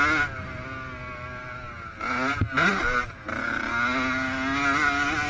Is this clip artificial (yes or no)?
no